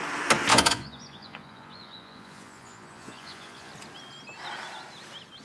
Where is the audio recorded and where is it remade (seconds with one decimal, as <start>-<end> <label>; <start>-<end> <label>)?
0.0-0.5 recorded; 0.5-3.7 remade; 3.7-5.4 recorded